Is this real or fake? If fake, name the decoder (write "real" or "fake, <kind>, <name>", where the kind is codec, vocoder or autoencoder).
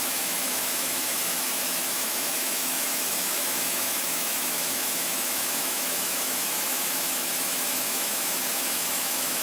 fake, autoencoder, DAC-VAE